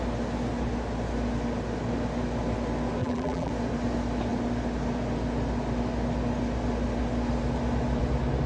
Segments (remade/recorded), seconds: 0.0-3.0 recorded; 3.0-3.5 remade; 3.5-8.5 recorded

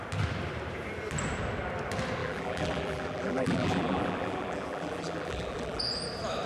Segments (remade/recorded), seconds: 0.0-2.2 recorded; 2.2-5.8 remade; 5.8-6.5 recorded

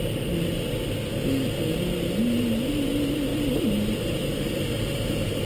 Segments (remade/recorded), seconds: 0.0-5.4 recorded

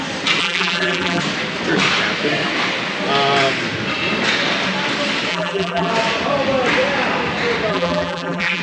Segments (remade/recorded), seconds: 0.0-0.4 recorded; 0.4-1.2 remade; 1.2-5.3 recorded; 5.3-5.9 remade; 5.9-7.7 recorded; 7.7-8.6 remade

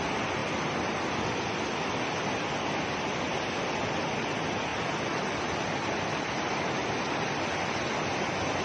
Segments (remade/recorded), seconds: 0.0-4.7 recorded; 4.7-5.4 remade; 5.4-8.6 recorded

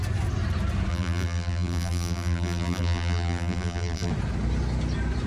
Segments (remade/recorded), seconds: 0.0-0.9 recorded; 0.9-4.1 remade; 4.1-5.3 recorded